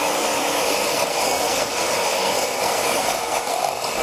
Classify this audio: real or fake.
fake